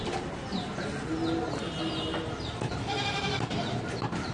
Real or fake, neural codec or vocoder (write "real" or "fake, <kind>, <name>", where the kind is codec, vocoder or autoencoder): real